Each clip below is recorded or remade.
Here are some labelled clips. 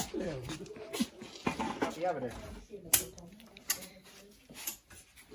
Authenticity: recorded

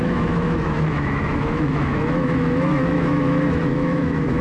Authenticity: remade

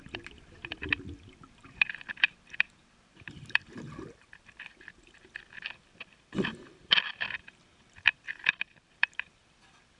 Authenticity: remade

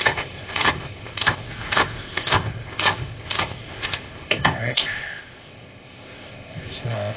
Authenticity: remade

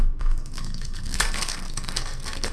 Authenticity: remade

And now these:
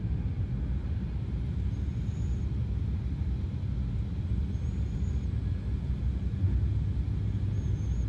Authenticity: recorded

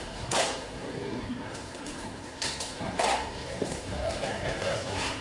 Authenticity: remade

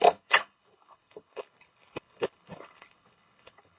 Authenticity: remade